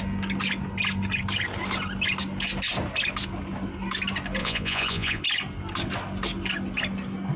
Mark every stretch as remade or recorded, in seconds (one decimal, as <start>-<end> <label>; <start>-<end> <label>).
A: 0.0-4.4 recorded; 4.4-5.2 remade; 5.2-7.4 recorded